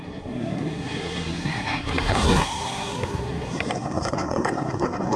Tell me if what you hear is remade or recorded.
remade